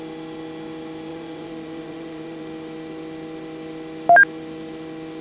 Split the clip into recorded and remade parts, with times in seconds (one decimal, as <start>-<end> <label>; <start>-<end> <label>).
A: 0.0-1.1 recorded; 1.1-2.4 remade; 2.4-5.2 recorded